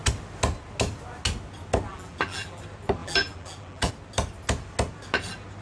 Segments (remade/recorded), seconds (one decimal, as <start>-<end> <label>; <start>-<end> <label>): 0.0-1.9 recorded; 1.9-2.6 remade; 2.6-3.0 recorded; 3.0-3.9 remade; 3.9-5.6 recorded